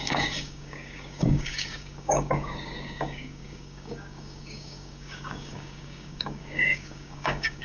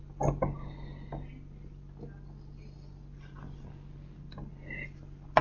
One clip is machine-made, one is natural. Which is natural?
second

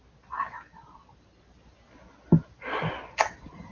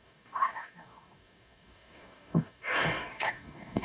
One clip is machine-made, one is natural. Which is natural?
first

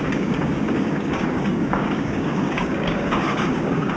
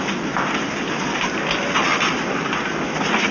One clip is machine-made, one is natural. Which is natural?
second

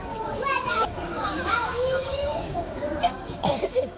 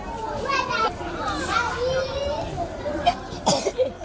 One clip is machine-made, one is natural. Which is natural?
second